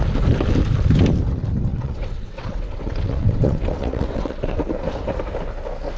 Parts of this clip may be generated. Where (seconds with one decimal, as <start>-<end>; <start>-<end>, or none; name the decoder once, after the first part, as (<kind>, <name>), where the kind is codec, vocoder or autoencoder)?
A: 1.7-4.6 (vocoder, WaveNeXt)

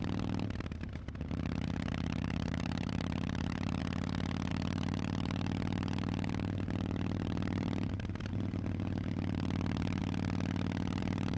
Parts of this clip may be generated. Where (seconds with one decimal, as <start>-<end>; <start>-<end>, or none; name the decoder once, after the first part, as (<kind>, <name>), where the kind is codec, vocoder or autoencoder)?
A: 0.0-3.8 (vocoder, BigVGAN v2); 4.5-10.0; 11.0-11.4

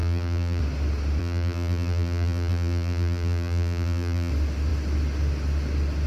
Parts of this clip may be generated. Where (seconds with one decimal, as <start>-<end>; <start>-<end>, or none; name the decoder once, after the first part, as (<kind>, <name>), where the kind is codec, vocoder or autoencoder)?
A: 0.0-0.6 (vocoder, BigVGAN v2); 1.2-4.3

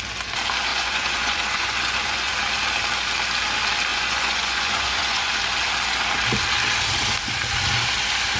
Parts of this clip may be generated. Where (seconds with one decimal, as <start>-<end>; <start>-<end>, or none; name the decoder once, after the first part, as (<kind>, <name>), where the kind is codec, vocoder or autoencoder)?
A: 0.7-2.3 (vocoder, Vocos); 3.9-5.3

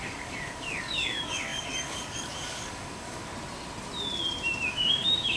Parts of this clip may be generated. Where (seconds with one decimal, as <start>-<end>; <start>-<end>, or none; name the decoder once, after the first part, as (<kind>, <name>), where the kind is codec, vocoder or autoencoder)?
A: 0.0-3.3 (codec, DAC); 4.7-5.4

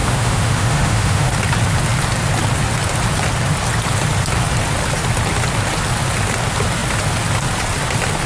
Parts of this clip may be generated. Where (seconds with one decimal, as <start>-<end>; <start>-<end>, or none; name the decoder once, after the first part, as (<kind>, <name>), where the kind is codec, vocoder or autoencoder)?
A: 0.0-1.3 (autoencoder, DAC-VAE)

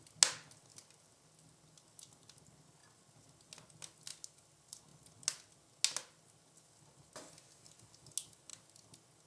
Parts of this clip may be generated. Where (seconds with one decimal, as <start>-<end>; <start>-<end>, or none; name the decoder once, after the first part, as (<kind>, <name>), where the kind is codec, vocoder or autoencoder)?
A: none